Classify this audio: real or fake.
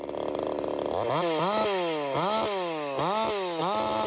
real